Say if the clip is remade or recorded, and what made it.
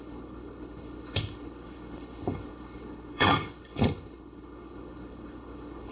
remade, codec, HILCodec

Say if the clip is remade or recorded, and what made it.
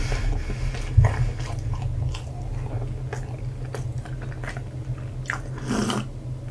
recorded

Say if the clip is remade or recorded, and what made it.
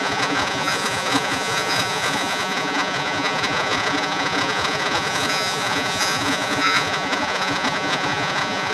remade, vocoder, Vocos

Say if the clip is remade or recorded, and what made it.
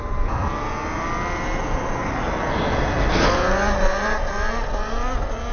recorded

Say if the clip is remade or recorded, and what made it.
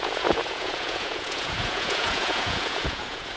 remade, vocoder, Vocos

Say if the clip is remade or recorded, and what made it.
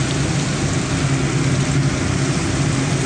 recorded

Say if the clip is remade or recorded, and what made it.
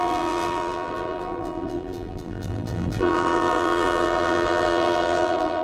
remade, vocoder, BigVGAN v2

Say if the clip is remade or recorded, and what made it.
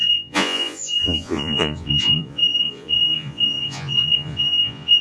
remade, vocoder, Vocos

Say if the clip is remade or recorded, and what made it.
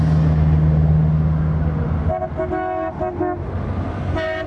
recorded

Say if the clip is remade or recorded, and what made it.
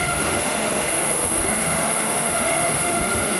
remade, autoencoder, DAC-VAE